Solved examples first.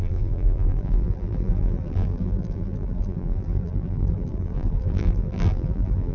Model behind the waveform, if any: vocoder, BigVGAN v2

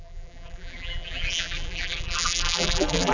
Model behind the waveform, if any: vocoder, BigVGAN v2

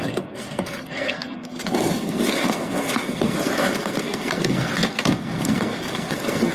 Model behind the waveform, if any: codec, SNAC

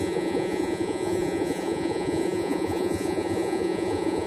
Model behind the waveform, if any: vocoder, Vocos